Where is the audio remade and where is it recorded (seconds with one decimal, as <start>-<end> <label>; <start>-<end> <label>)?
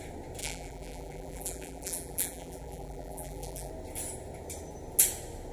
0.0-0.4 recorded; 0.4-3.7 remade; 3.7-5.5 recorded